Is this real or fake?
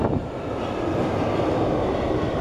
real